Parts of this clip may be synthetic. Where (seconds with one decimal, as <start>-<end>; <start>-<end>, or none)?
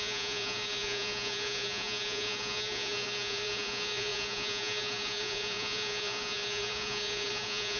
0.0-7.8